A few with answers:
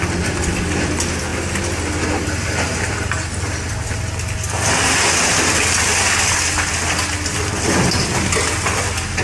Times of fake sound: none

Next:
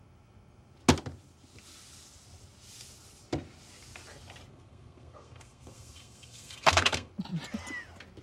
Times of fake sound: 4.5-7.1 (codec, SNAC)

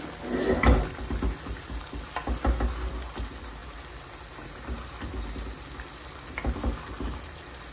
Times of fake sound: none

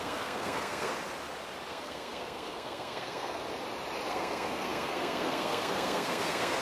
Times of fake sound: 0.0-0.9 (codec, SNAC); 1.7-3.4; 4.1-6.6